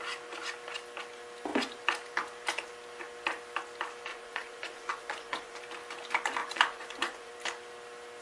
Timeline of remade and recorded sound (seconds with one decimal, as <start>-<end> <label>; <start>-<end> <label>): 0.0-4.1 recorded; 4.1-5.6 remade; 5.6-6.4 recorded; 6.4-7.3 remade; 7.3-8.2 recorded